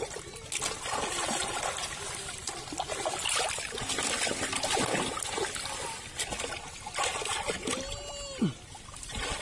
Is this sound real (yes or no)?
yes